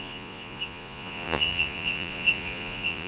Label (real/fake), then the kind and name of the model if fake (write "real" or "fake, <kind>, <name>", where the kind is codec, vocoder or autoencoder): fake, vocoder, Vocos